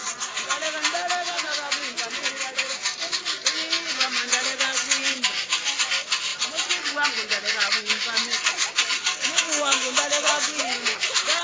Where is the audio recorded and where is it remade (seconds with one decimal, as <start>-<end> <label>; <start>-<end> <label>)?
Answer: 0.0-9.2 recorded; 9.2-10.6 remade; 10.6-11.4 recorded